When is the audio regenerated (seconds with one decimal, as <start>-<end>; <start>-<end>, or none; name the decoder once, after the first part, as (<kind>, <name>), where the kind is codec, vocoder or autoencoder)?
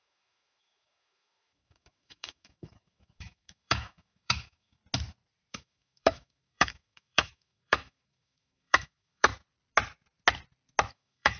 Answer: 0.0-4.8 (autoencoder, DAC-VAE); 5.5-9.3; 10.9-11.4